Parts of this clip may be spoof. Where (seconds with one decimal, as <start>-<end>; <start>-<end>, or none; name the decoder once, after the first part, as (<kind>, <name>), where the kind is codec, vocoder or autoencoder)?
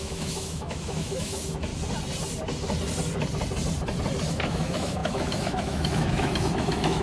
0.0-1.7 (autoencoder, DAC-VAE); 4.3-7.0